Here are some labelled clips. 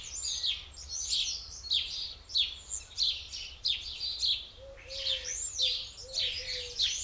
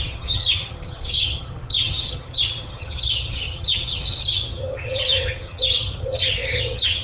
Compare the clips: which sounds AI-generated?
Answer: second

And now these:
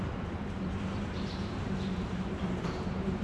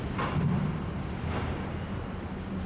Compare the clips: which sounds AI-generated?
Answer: first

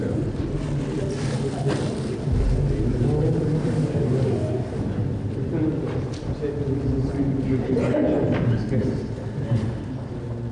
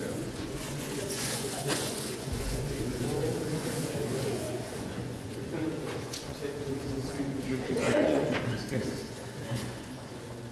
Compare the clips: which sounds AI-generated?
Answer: second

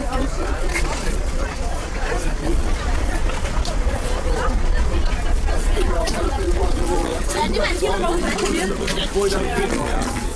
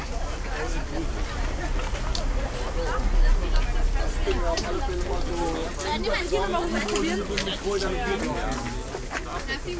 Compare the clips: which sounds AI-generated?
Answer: first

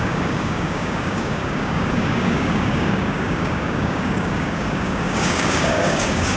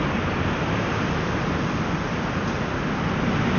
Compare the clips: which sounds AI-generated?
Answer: first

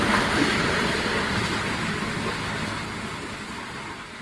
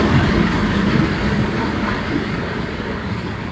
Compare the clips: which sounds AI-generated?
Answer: second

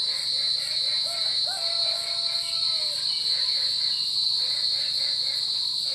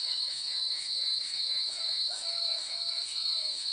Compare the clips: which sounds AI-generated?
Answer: second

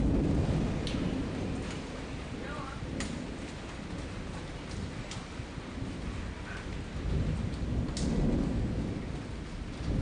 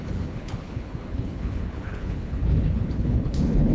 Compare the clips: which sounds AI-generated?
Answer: second